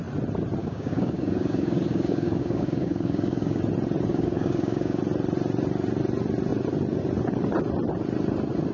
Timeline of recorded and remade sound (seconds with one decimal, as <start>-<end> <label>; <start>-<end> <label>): 0.0-0.6 recorded; 0.6-3.6 remade; 3.6-4.1 recorded; 4.1-5.0 remade; 5.0-8.7 recorded